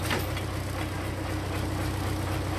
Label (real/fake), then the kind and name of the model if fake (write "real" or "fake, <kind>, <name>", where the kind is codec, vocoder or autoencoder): real